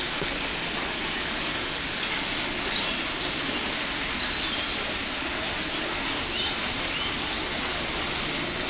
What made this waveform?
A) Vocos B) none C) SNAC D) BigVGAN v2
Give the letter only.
B